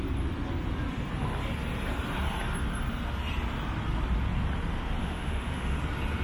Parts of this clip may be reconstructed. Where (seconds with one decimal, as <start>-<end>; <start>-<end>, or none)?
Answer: 5.0-5.8